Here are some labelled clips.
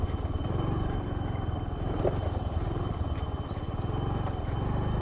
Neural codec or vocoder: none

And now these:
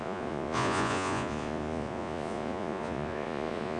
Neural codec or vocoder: vocoder, Vocos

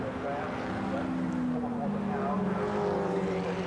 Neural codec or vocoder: none